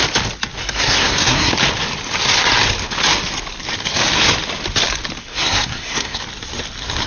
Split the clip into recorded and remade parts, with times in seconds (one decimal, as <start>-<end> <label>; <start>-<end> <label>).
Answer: 0.0-0.6 recorded; 0.6-1.5 remade; 1.5-5.2 recorded; 5.2-6.2 remade; 6.2-7.1 recorded